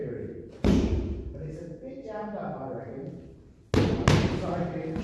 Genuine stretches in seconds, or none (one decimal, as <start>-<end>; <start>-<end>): 0.0-1.9; 2.4-4.1